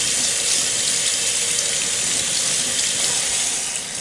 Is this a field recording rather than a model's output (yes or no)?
yes